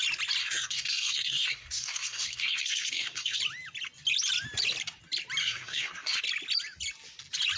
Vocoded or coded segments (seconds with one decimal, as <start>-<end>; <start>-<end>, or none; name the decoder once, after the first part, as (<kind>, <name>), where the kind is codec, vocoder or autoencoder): 0.4-3.4 (codec, SNAC); 5.4-6.2